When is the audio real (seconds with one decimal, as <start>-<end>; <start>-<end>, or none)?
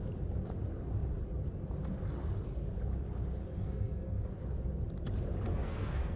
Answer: 0.0-3.4; 4.3-5.5